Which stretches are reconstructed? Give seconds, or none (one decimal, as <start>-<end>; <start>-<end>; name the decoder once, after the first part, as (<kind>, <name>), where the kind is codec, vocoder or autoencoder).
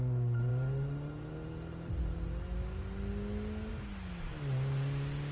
none